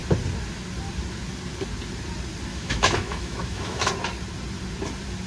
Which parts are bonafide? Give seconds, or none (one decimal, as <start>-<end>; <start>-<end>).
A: 0.0-2.5; 3.9-5.3